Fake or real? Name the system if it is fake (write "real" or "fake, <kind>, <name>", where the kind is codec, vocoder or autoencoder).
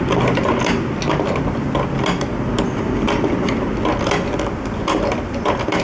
real